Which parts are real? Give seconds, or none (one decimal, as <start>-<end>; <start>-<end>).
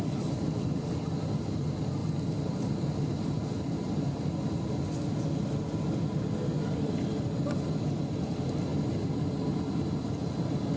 2.0-4.2